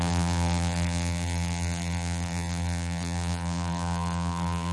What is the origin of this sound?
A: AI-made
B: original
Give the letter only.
A